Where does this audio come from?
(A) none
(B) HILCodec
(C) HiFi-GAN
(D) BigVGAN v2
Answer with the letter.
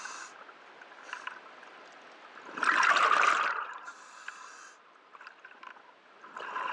A